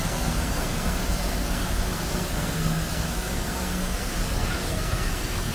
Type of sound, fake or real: fake